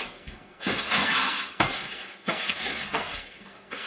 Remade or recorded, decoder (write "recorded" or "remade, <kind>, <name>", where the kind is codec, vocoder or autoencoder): remade, codec, SNAC